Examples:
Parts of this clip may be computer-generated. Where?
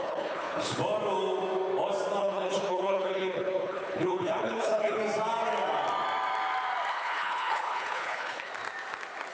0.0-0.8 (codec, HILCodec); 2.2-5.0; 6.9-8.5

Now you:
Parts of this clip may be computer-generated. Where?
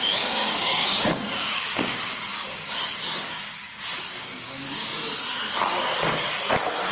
0.0-4.9 (codec, DAC)